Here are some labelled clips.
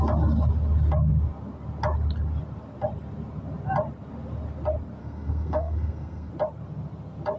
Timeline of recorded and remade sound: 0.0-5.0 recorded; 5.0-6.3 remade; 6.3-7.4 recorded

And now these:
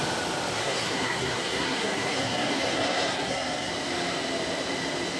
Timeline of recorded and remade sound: 0.0-0.6 recorded; 0.6-3.7 remade; 3.7-5.2 recorded

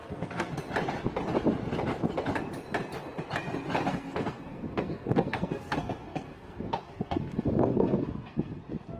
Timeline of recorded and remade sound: 0.0-0.6 remade; 0.6-3.9 recorded; 3.9-8.6 remade; 8.6-9.0 recorded

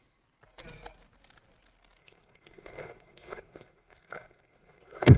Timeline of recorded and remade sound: 0.0-2.0 recorded; 2.0-5.2 remade

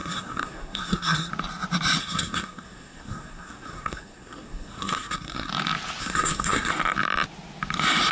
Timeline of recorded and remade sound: 0.0-1.3 remade; 1.3-2.0 recorded; 2.0-5.5 remade; 5.5-6.0 recorded; 6.0-6.7 remade; 6.7-8.1 recorded